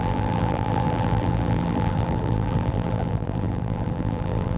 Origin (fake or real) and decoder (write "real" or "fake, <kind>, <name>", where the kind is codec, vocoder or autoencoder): fake, vocoder, BigVGAN v2